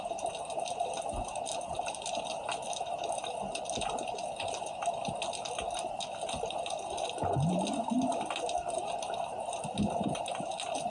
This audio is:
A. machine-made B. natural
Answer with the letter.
B